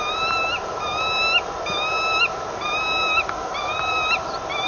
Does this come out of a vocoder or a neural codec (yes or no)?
no